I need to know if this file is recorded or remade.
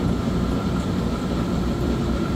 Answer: remade